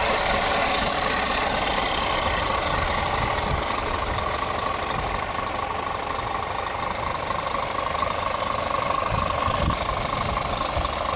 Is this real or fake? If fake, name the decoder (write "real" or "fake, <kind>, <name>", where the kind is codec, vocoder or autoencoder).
real